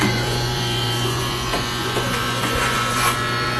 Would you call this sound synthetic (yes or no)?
yes